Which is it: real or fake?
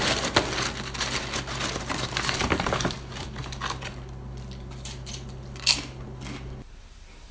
real